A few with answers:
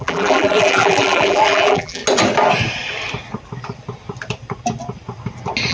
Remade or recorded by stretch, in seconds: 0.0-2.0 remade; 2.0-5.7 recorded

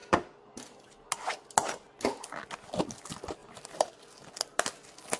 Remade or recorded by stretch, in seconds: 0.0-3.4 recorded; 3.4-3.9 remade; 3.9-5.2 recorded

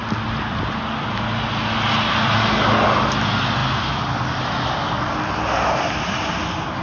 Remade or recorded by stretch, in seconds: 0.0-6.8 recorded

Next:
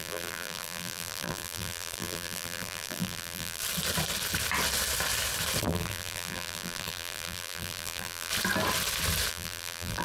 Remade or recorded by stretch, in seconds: 0.0-3.6 remade; 3.6-5.6 recorded; 5.6-8.3 remade; 8.3-9.3 recorded; 9.3-10.0 remade

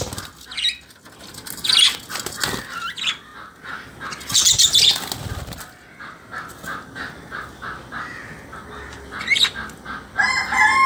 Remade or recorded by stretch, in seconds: 0.0-10.9 recorded

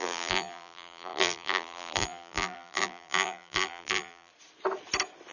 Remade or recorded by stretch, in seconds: 0.0-4.3 remade; 4.3-5.3 recorded

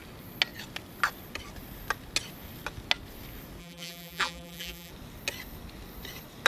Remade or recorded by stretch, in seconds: 0.0-3.6 recorded; 3.6-4.9 remade; 4.9-6.5 recorded

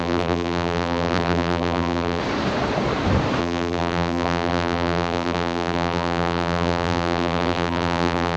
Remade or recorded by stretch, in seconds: 0.0-2.2 remade; 2.2-3.4 recorded; 3.4-8.4 remade